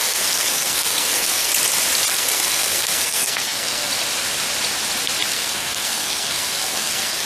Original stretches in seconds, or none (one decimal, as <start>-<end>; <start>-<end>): 1.5-2.1; 3.9-5.3